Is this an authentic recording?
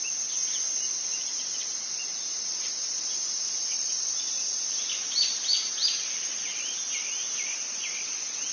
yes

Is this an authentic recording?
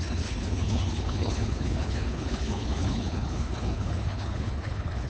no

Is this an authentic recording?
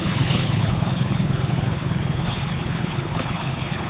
no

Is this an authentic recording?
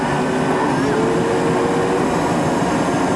yes